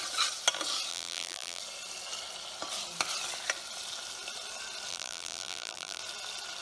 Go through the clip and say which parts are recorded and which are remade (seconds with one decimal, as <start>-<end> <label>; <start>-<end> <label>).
0.0-0.9 recorded; 0.9-1.6 remade; 1.6-4.9 recorded; 4.9-6.0 remade; 6.0-6.6 recorded

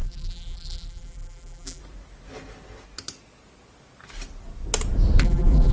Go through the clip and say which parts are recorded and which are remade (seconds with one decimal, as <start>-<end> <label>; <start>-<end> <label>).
0.0-1.8 remade; 1.8-5.2 recorded; 5.2-5.7 remade

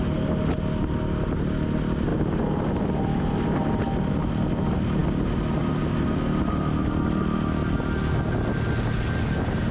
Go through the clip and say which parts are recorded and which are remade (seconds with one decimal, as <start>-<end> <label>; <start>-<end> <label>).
0.0-9.7 recorded

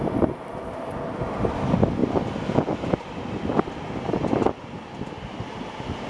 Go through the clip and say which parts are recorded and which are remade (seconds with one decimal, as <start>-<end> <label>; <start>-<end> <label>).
0.0-2.0 recorded; 2.0-5.3 remade; 5.3-6.1 recorded